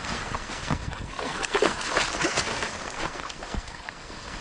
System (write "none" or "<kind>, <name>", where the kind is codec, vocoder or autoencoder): codec, SNAC